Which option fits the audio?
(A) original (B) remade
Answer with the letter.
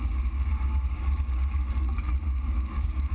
B